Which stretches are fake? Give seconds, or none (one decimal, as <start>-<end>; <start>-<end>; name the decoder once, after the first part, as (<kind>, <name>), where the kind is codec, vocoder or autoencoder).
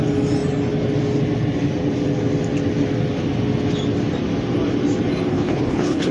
5.3-6.1 (codec, HILCodec)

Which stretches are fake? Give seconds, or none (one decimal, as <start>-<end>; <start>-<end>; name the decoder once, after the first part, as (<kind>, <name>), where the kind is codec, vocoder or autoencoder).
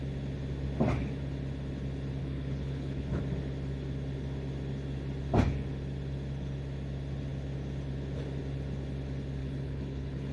2.2-3.2 (codec, HILCodec); 9.4-10.3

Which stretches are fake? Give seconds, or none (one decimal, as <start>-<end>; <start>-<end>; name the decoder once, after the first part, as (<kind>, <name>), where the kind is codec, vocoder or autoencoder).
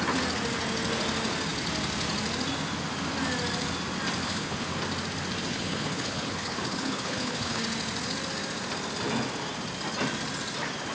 4.2-4.8 (codec, HILCodec); 5.5-7.6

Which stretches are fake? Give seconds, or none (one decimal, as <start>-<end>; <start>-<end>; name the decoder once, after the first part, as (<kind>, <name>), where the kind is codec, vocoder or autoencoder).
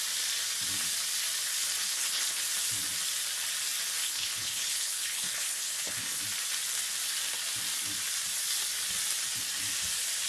1.8-2.4 (codec, HILCodec); 4.0-6.2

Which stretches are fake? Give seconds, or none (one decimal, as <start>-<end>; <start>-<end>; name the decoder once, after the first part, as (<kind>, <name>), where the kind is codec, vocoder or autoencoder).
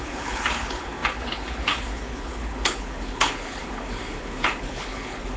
0.0-5.4 (codec, HILCodec)